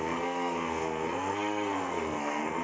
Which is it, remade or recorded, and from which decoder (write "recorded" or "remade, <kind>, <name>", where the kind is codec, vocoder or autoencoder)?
remade, codec, SNAC